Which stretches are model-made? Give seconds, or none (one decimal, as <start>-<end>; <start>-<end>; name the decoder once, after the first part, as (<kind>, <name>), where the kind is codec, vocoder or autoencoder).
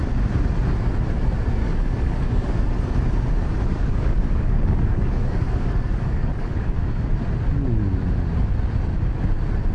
1.6-2.8 (codec, DAC); 3.7-7.1